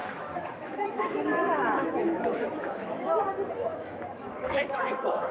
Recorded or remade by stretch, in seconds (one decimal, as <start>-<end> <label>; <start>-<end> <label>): 0.0-3.2 remade; 3.2-3.7 recorded; 3.7-5.3 remade